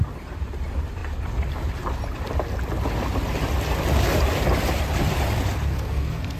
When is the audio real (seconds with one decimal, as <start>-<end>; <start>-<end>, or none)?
0.0-5.7